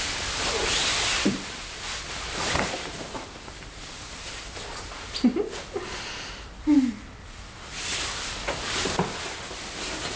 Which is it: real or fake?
real